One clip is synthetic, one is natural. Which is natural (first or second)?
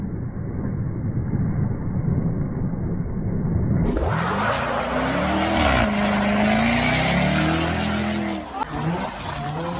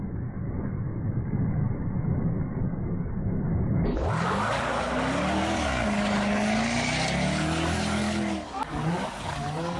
first